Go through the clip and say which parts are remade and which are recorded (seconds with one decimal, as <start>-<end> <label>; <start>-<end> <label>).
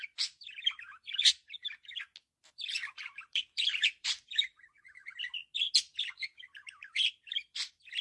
0.0-1.6 remade; 1.6-2.5 recorded; 2.5-5.4 remade; 5.4-6.0 recorded; 6.0-8.0 remade